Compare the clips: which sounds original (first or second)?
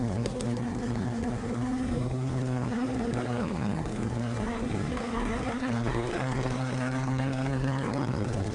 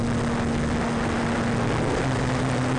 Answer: second